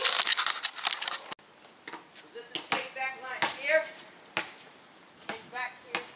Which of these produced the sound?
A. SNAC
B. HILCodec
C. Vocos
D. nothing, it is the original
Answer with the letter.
D